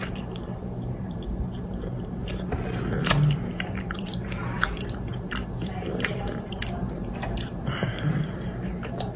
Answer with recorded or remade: remade